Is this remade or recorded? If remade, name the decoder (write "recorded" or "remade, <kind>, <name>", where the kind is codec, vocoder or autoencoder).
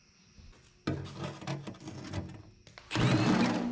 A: recorded